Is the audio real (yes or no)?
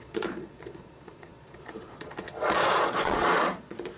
no